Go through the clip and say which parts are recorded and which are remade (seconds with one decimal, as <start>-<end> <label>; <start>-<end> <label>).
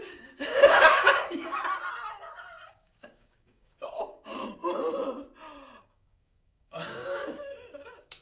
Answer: 0.0-1.6 remade; 1.6-2.7 recorded; 2.7-4.6 remade; 4.6-5.8 recorded; 5.8-8.2 remade